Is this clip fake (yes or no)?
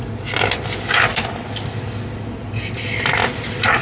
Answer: no